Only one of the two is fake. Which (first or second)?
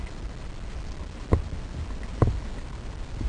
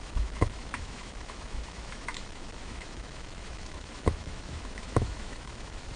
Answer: second